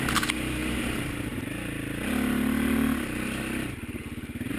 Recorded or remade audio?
recorded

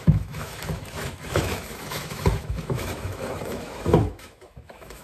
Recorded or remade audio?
remade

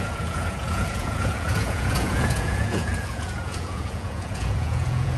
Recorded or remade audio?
remade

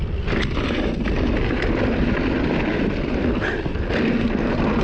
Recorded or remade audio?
recorded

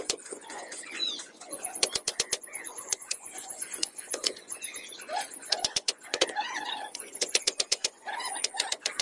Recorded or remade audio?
remade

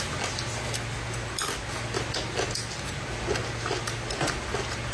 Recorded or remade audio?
recorded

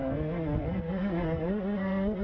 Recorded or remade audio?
remade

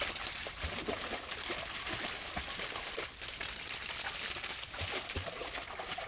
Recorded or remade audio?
recorded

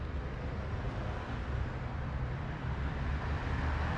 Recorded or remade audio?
recorded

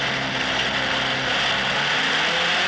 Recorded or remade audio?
recorded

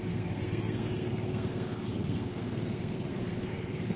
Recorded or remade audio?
remade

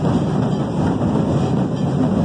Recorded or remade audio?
recorded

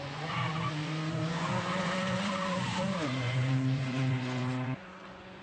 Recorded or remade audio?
remade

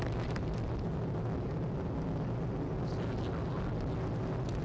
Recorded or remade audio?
recorded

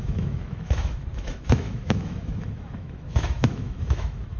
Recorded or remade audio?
remade